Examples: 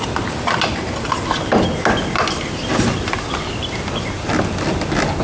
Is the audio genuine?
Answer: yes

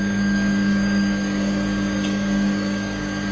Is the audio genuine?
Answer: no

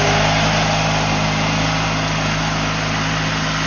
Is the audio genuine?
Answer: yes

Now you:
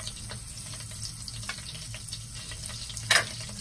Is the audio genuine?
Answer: yes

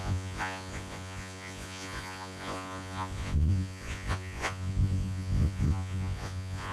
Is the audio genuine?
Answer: no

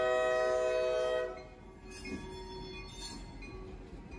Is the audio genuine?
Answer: yes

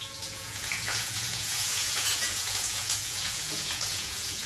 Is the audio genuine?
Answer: no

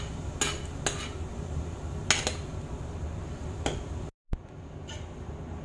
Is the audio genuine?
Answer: yes